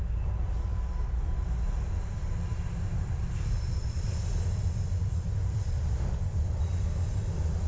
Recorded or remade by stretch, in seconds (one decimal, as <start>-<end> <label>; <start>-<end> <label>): 0.0-0.7 recorded; 0.7-1.5 remade; 1.5-3.8 recorded; 3.8-6.6 remade; 6.6-7.7 recorded